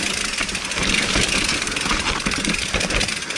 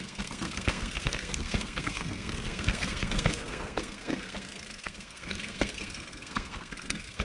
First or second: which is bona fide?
first